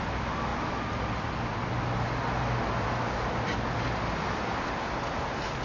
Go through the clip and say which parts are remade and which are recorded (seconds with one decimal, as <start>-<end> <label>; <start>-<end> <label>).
0.0-5.6 recorded